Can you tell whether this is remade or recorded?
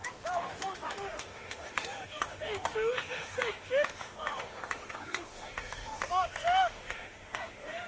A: remade